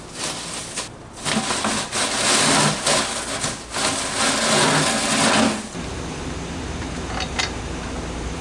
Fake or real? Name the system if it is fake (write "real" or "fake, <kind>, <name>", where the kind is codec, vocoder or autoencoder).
real